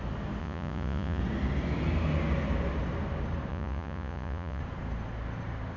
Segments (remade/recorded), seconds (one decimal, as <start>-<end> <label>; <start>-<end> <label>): 0.0-0.4 recorded; 0.4-1.2 remade; 1.2-3.5 recorded; 3.5-4.6 remade; 4.6-5.8 recorded